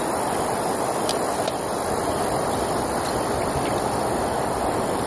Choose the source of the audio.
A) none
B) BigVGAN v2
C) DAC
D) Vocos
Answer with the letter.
B